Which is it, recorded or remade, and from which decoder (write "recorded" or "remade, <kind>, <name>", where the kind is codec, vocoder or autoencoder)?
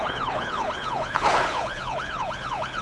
remade, codec, HILCodec